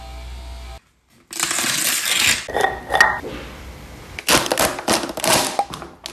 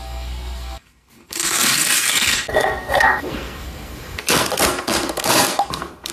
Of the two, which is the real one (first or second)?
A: first